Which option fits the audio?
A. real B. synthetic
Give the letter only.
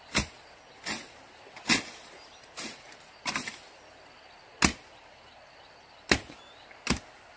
A